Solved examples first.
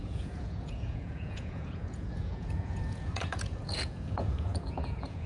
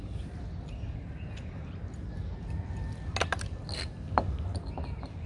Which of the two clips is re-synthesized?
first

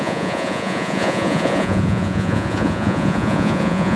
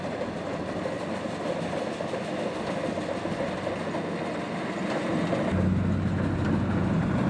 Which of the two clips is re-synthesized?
first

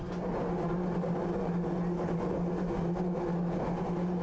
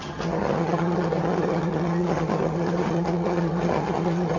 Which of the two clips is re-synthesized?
second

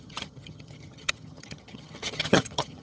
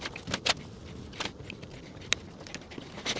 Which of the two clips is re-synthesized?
first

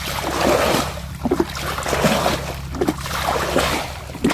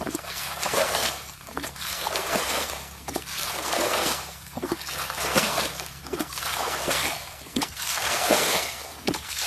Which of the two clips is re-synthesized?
second